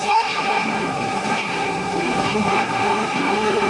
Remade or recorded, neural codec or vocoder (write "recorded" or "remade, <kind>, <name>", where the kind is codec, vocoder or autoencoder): remade, codec, SNAC